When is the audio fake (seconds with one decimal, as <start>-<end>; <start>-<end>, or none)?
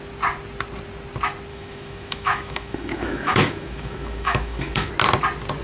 1.5-4.9